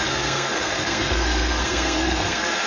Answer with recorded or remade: remade